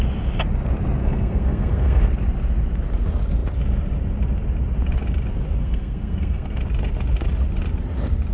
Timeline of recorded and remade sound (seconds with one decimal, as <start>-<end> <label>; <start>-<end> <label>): 0.0-1.0 recorded; 1.0-2.0 remade; 2.0-5.6 recorded; 5.6-6.6 remade; 6.6-8.3 recorded